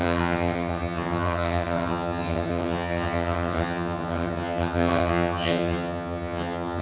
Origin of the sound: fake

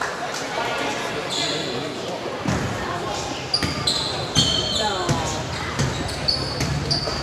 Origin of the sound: real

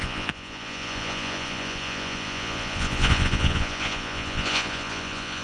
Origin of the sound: fake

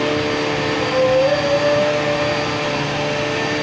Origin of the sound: real